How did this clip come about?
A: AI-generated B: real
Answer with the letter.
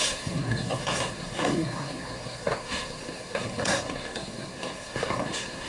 A